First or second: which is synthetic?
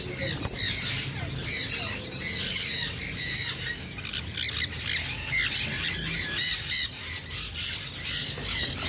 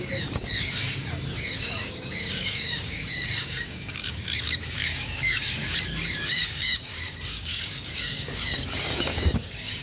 second